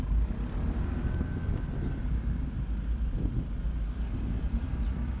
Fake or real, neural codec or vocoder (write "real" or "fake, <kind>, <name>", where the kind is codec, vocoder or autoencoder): real